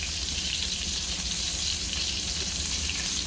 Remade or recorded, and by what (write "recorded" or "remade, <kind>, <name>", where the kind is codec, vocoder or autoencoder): remade, vocoder, BigVGAN v2